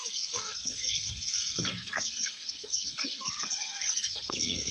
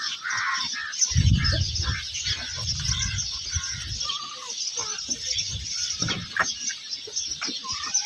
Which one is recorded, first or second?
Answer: second